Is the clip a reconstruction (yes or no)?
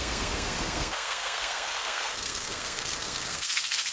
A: yes